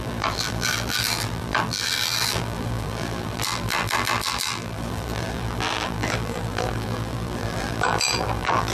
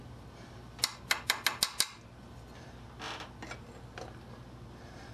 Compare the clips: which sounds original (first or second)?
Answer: second